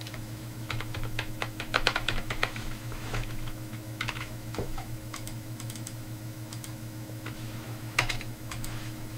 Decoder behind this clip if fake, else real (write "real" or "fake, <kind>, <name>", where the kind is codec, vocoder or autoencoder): fake, autoencoder, DAC-VAE